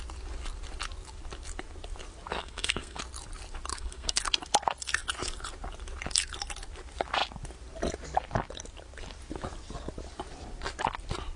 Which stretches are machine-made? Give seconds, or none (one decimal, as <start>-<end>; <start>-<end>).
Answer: 2.3-3.0; 3.7-4.2